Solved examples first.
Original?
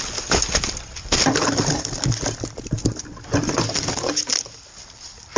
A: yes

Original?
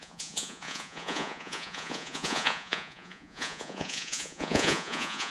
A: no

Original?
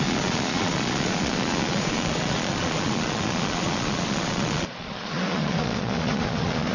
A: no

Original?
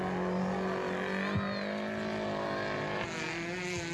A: yes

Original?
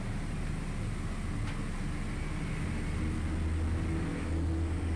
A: yes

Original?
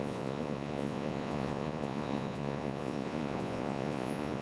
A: no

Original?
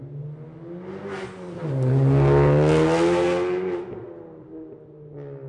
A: yes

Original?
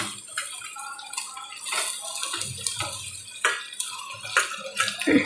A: yes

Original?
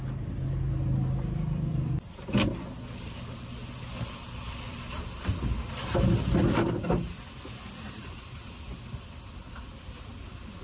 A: yes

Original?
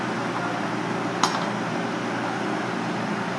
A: yes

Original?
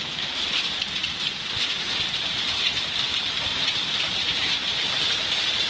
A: yes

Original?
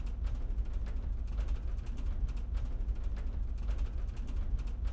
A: yes